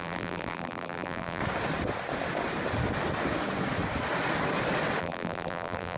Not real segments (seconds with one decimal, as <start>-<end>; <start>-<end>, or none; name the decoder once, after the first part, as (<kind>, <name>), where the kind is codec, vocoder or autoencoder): 0.0-1.4 (vocoder, BigVGAN v2); 5.0-6.0